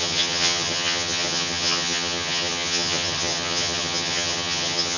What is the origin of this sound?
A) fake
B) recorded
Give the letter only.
A